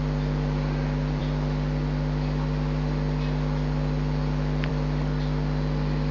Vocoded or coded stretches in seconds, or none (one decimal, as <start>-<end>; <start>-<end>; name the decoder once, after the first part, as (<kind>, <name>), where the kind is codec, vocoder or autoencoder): none